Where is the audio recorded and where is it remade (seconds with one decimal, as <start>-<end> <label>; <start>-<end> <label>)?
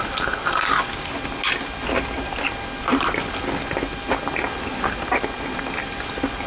0.0-6.5 recorded